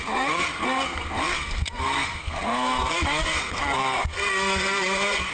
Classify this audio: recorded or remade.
remade